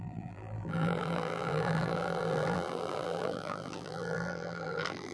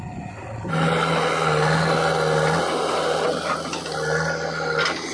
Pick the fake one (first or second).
first